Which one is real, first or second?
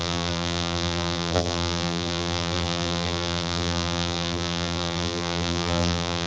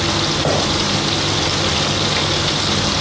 second